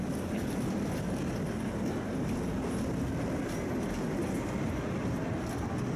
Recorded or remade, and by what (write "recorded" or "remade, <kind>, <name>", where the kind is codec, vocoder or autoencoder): recorded